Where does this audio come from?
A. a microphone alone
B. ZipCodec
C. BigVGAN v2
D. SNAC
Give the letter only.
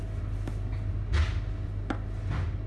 A